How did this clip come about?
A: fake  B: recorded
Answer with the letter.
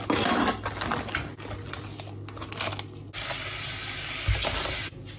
B